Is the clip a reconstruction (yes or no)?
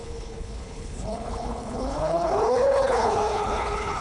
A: yes